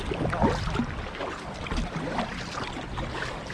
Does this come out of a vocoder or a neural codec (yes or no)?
no